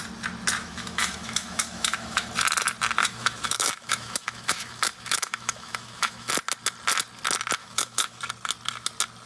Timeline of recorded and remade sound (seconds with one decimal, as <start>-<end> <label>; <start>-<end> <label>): 0.0-0.6 recorded; 0.6-2.3 remade; 2.3-3.0 recorded; 3.0-6.3 remade; 6.3-7.6 recorded; 7.6-8.2 remade; 8.2-9.3 recorded